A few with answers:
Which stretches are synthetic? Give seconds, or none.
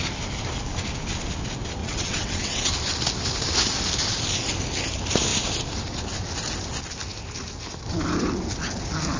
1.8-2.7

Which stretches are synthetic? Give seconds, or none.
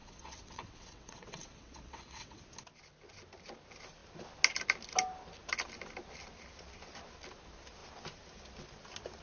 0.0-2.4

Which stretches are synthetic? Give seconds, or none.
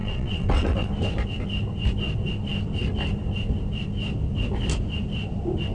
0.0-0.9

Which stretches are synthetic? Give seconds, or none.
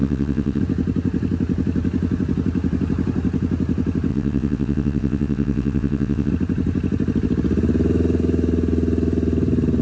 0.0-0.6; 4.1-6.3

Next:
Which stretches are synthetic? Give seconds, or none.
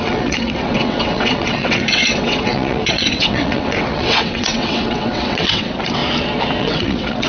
0.0-6.0; 6.6-7.3